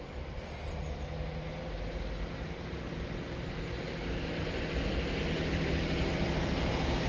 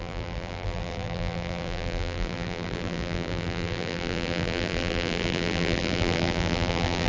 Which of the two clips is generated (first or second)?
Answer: second